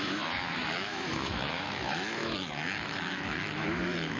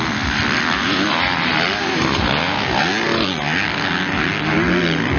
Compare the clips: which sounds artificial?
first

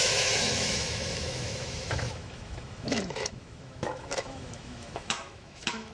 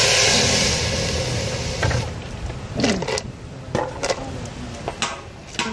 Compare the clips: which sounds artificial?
first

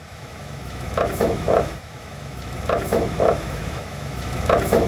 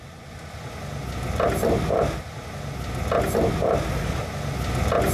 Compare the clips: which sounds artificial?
first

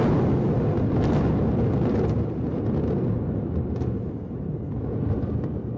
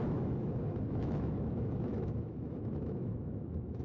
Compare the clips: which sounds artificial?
second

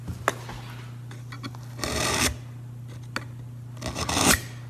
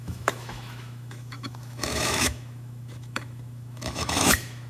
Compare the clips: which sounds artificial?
second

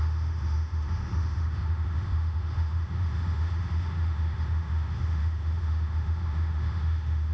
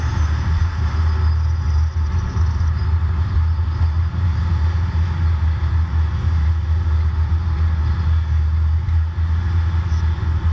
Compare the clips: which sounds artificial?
first